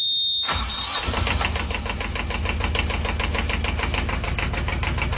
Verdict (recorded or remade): recorded